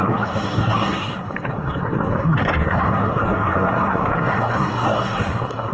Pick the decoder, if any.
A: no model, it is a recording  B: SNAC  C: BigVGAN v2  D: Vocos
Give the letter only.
B